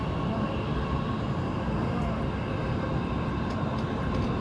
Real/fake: real